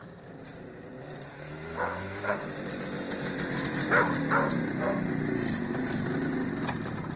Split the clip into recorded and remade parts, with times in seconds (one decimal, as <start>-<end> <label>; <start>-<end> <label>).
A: 0.0-1.3 recorded; 1.3-2.4 remade; 2.4-7.2 recorded